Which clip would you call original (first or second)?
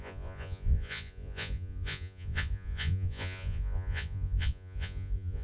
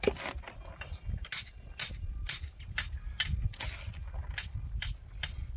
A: second